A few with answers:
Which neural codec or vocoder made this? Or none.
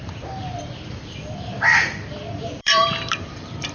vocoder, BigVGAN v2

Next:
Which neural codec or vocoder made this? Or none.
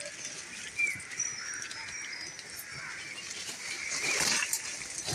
none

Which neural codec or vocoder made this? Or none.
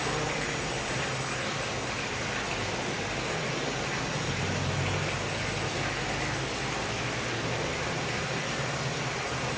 none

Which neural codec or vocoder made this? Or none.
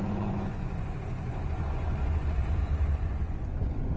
vocoder, Vocos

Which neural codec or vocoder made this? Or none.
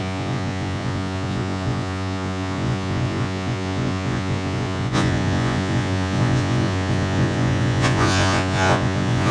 vocoder, Vocos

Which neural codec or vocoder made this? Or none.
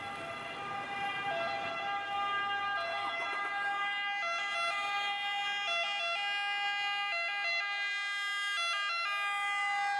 none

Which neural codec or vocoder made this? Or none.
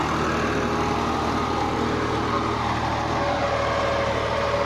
none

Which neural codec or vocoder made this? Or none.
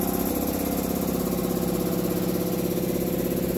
none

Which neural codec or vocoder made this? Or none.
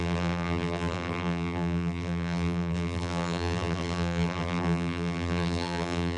vocoder, BigVGAN v2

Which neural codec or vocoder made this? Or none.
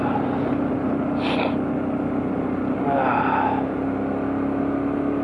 none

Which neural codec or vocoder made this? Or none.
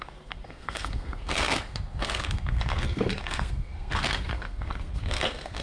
codec, SNAC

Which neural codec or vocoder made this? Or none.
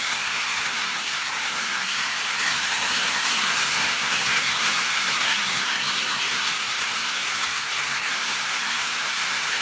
codec, SNAC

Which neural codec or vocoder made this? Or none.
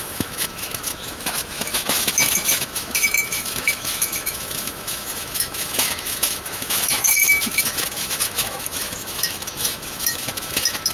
autoencoder, DAC-VAE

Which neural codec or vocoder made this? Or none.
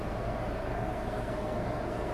codec, SNAC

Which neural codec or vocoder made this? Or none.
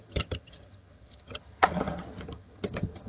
vocoder, HiFi-GAN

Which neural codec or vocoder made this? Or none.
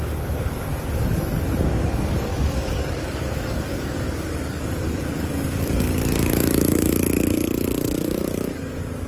codec, DAC